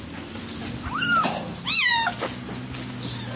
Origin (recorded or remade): recorded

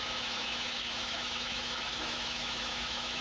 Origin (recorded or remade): remade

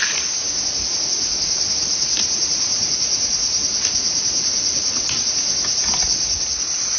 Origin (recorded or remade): recorded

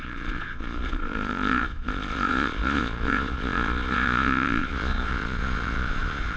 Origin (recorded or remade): remade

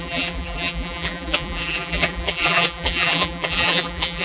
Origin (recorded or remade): remade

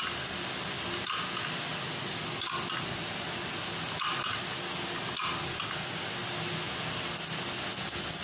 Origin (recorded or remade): recorded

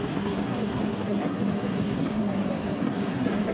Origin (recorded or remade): remade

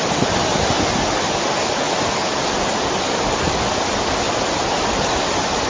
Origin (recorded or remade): recorded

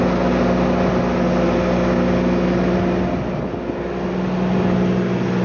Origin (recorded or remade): recorded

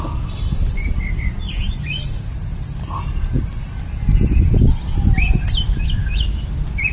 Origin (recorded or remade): recorded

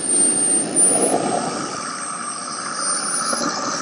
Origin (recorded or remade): recorded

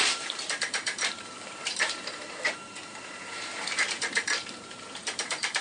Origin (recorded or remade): remade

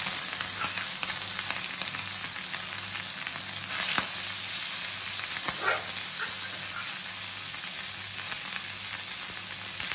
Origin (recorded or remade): recorded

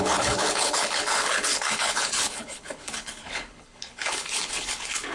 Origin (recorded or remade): remade